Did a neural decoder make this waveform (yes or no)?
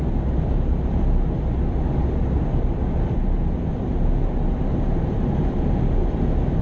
no